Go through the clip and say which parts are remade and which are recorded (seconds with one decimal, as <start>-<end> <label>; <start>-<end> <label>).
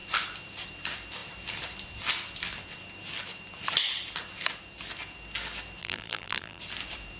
0.0-5.8 recorded; 5.8-6.6 remade; 6.6-7.2 recorded